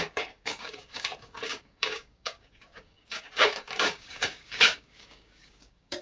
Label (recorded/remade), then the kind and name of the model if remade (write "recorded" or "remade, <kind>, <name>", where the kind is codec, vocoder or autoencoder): remade, codec, DAC